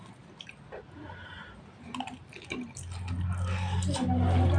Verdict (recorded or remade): recorded